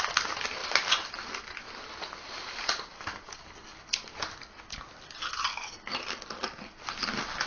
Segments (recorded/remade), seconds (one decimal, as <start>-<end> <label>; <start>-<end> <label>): 0.0-7.5 recorded